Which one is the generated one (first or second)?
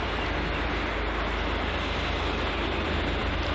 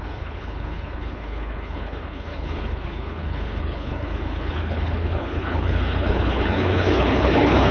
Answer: second